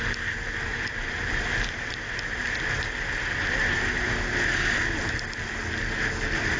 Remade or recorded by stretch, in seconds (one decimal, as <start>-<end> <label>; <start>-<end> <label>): 0.0-0.7 recorded; 0.7-1.9 remade; 1.9-6.6 recorded